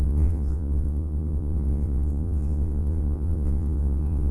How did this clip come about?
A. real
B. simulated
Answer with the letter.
B